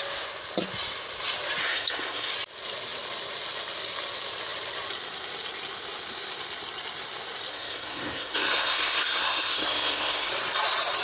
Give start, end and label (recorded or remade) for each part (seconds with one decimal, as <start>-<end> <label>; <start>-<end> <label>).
0.0-1.6 recorded; 1.6-2.3 remade; 2.3-7.5 recorded; 7.5-10.3 remade; 10.3-11.0 recorded